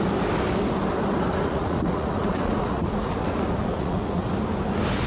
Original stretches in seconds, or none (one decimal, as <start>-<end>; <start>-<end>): 0.0-1.3; 4.3-5.1